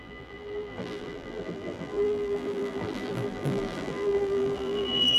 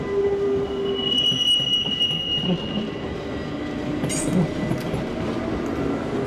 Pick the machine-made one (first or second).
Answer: first